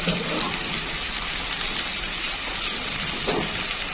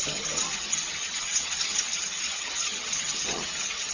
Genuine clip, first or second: first